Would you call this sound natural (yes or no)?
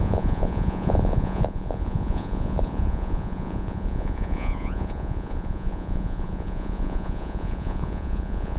no